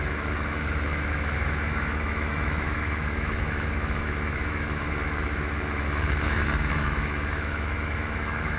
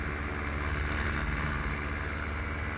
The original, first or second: second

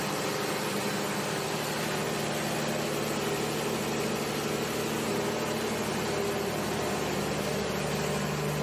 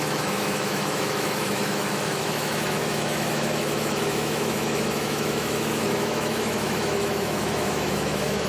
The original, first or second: first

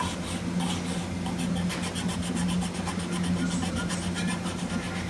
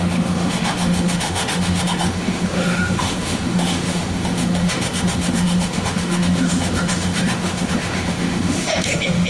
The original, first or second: first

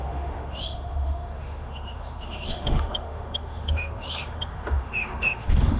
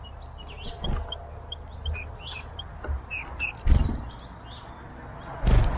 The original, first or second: second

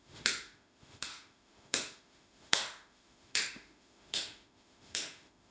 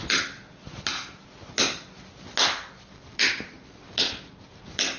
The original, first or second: second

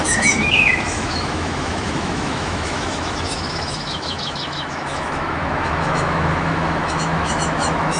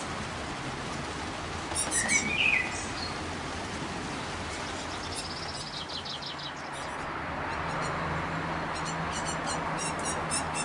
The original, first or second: second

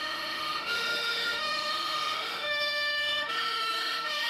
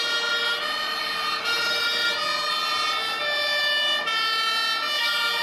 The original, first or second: second